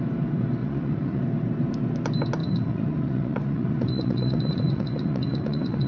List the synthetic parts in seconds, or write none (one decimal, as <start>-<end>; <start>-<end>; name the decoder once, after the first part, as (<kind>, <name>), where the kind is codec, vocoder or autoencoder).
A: 0.6-1.2 (vocoder, Vocos); 2.4-5.9